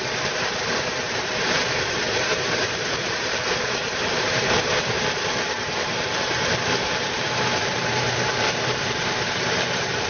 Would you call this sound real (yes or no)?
no